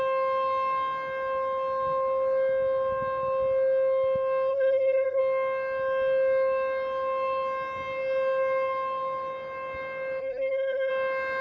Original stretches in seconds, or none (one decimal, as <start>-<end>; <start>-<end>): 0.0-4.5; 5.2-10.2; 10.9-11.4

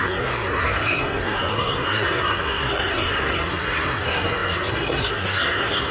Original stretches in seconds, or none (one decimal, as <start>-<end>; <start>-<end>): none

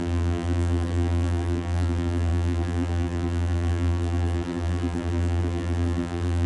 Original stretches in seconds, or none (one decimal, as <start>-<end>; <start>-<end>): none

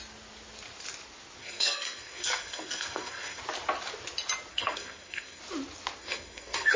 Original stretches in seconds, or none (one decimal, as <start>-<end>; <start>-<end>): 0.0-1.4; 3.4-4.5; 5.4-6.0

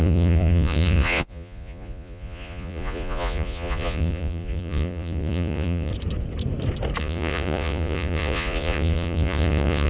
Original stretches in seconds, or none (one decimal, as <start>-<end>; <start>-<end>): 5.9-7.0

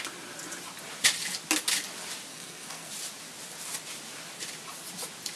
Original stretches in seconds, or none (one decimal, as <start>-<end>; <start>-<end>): 0.0-2.3; 2.9-5.4